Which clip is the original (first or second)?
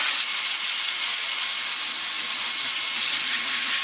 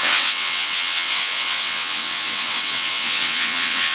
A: first